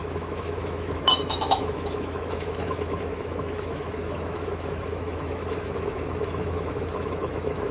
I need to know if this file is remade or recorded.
remade